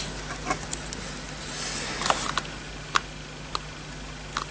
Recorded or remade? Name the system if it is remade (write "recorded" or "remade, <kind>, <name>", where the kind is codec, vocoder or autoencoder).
recorded